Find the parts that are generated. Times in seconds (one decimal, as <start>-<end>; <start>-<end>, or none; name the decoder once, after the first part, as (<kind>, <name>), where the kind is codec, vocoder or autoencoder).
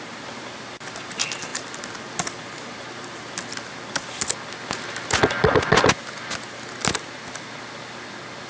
none